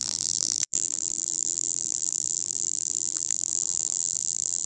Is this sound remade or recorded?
remade